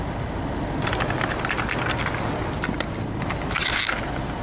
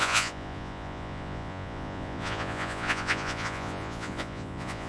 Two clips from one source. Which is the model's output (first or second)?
second